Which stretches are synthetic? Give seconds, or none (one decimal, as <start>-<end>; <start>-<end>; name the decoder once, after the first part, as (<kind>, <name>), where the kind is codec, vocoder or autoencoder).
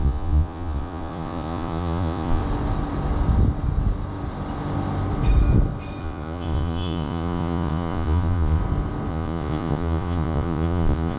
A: 0.0-2.4 (vocoder, Vocos); 6.0-8.6; 9.1-11.2